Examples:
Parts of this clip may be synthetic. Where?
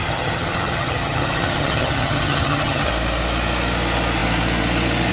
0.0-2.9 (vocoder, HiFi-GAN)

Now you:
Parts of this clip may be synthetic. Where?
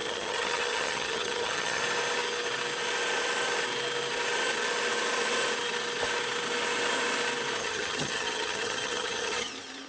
0.0-1.8 (vocoder, HiFi-GAN); 7.6-9.5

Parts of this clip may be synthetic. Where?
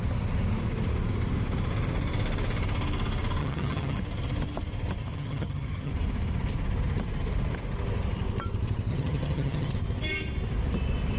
3.4-4.0 (vocoder, HiFi-GAN); 5.0-5.9; 8.9-9.7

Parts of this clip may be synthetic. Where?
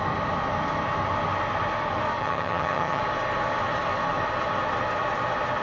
2.2-3.0 (vocoder, HiFi-GAN)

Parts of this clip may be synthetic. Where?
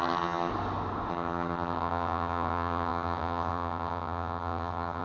0.0-0.5 (vocoder, HiFi-GAN); 1.1-5.0